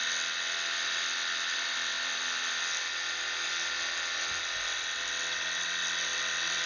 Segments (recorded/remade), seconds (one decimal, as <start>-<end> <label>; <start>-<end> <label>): 0.0-6.7 recorded